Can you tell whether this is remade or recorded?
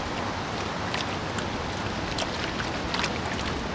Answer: recorded